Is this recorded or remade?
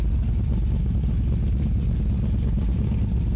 recorded